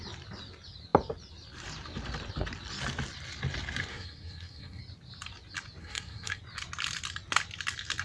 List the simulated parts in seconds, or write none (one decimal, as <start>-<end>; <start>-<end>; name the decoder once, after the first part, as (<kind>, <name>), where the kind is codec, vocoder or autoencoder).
3.9-4.8 (codec, SNAC); 5.8-6.4